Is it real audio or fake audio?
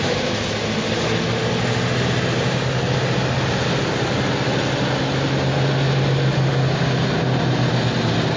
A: real